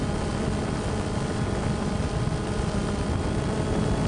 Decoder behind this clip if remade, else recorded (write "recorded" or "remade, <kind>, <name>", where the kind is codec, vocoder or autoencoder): recorded